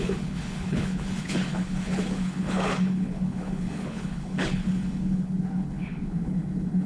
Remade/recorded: remade